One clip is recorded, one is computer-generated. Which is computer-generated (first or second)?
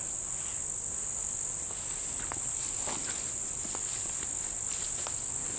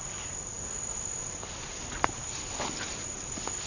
second